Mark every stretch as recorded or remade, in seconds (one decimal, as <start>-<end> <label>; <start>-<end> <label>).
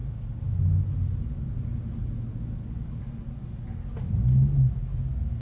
0.0-5.4 recorded